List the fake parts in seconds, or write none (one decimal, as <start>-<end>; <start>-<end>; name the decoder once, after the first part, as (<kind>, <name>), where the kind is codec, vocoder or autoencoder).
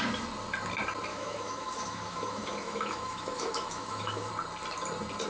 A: 1.1-4.3 (autoencoder, DAC-VAE)